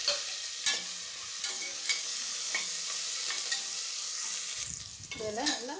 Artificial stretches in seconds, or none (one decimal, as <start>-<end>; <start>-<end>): 1.5-2.7; 5.2-5.8